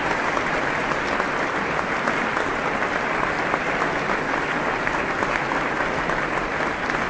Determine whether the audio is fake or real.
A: real